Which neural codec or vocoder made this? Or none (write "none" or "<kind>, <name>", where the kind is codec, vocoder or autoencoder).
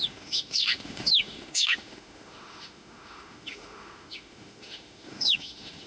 autoencoder, DAC-VAE